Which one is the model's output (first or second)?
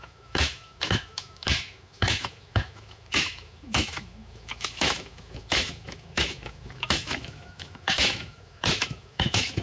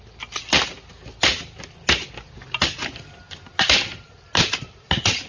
first